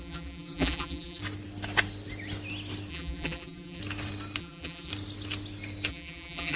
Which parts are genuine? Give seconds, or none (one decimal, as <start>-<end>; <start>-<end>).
1.2-2.9; 3.8-4.4; 4.9-5.9